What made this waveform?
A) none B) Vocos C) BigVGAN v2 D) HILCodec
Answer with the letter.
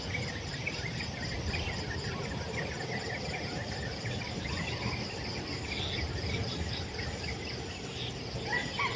A